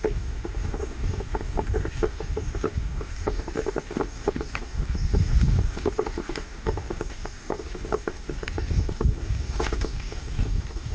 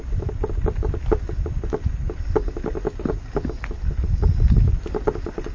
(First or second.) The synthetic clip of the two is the first